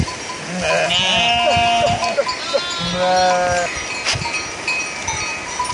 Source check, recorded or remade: recorded